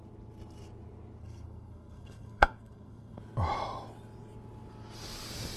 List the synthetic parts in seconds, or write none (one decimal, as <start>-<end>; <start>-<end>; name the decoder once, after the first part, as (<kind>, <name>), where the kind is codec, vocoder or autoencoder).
1.2-3.2 (codec, SNAC)